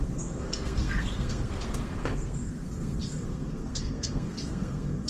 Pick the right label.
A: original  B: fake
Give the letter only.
B